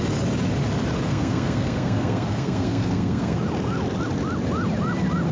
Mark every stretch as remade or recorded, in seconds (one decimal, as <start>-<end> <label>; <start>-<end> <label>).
0.0-1.1 recorded; 1.1-3.4 remade; 3.4-5.3 recorded